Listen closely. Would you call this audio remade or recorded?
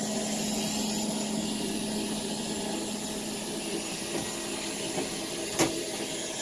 recorded